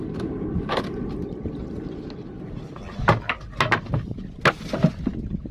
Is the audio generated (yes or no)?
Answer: no